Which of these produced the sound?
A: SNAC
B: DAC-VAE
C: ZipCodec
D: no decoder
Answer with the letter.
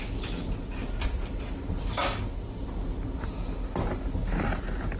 D